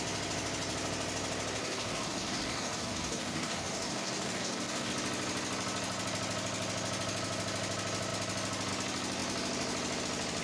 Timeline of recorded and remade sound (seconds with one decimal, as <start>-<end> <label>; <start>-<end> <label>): 0.0-1.6 recorded; 1.6-4.9 remade; 4.9-10.4 recorded

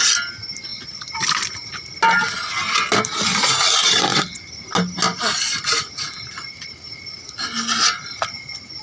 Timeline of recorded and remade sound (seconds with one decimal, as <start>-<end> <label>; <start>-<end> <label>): 0.0-3.8 recorded; 3.8-4.4 remade; 4.4-8.8 recorded

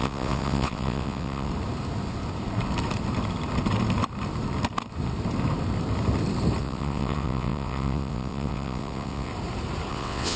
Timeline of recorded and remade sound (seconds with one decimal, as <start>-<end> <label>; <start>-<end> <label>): 0.0-1.5 remade; 1.5-6.6 recorded; 6.6-9.3 remade; 9.3-9.9 recorded; 9.9-10.4 remade

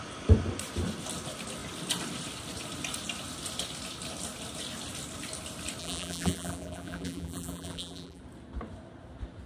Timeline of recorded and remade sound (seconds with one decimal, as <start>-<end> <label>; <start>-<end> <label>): 0.0-5.8 recorded; 5.8-8.2 remade; 8.2-9.5 recorded

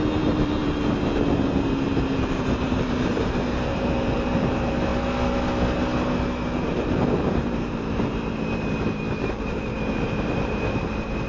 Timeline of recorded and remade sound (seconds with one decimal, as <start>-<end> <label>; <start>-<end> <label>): 0.0-4.9 remade; 4.9-6.6 recorded; 6.6-11.3 remade